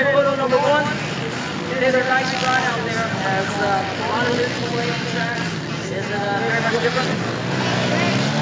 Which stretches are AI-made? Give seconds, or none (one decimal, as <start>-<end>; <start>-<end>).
none